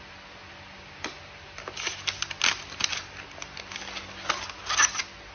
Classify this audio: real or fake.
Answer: real